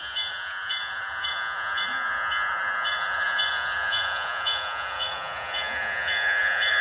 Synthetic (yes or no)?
yes